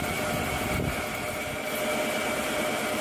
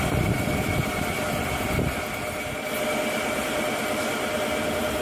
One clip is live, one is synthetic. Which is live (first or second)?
first